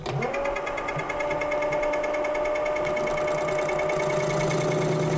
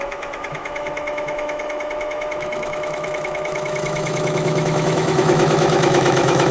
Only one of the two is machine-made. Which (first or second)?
second